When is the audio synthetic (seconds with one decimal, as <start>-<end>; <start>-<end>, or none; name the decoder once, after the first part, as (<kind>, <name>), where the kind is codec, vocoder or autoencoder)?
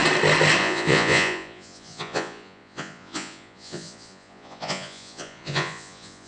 0.6-6.3 (vocoder, Vocos)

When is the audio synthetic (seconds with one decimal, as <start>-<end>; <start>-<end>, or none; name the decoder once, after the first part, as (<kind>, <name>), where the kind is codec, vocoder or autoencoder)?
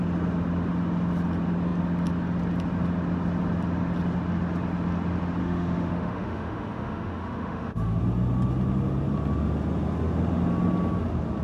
5.4-8.0 (autoencoder, DAC-VAE)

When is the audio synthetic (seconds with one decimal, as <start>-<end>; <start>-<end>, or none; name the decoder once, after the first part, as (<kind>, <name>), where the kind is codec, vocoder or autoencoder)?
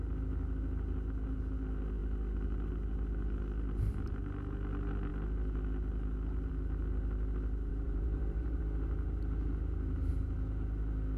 7.7-8.6 (vocoder, BigVGAN v2)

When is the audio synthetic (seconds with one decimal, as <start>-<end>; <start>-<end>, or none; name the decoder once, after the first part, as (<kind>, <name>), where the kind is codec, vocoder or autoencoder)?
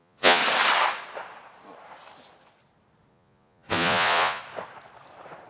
0.0-0.4 (vocoder, Vocos); 3.1-4.4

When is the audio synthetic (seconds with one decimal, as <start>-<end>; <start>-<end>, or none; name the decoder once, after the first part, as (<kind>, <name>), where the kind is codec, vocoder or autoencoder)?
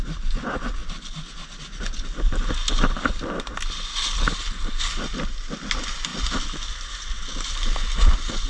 none